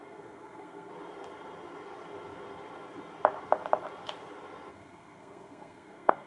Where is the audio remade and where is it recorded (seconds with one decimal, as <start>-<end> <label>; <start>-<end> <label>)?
0.0-0.9 remade; 0.9-4.7 recorded; 4.7-6.3 remade

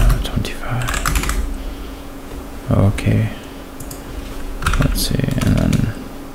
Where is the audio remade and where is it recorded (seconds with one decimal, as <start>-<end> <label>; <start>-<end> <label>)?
0.0-1.4 recorded; 1.4-5.0 remade; 5.0-6.3 recorded